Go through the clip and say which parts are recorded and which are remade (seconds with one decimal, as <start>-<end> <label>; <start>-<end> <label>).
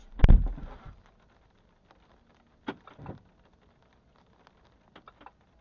0.0-5.6 recorded